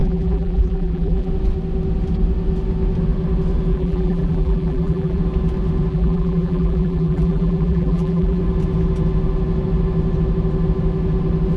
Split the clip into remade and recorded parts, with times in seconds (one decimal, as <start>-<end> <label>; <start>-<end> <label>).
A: 0.0-1.3 remade; 1.3-3.7 recorded; 3.7-5.2 remade; 5.2-5.9 recorded; 5.9-8.4 remade; 8.4-11.6 recorded